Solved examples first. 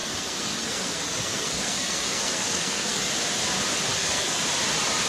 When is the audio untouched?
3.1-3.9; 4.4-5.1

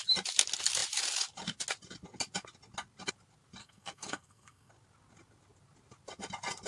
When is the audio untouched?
0.0-3.6; 4.7-6.7

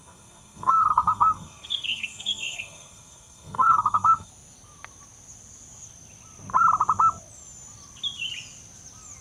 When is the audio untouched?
4.3-9.2

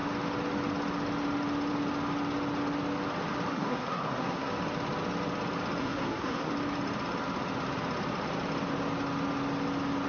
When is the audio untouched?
0.0-3.5; 4.5-5.8; 6.5-10.1